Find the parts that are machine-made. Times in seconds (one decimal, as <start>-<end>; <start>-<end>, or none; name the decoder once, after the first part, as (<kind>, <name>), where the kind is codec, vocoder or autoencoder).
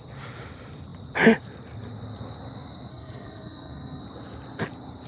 2.9-4.0 (codec, SNAC)